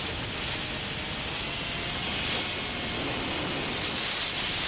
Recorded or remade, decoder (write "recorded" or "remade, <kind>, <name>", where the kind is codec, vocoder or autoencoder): recorded